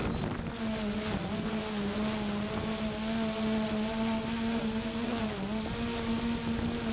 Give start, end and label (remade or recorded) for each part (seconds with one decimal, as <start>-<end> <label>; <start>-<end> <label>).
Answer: 0.0-4.6 recorded; 4.6-5.2 remade; 5.2-6.9 recorded